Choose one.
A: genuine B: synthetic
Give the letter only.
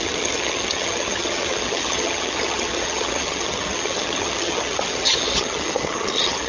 B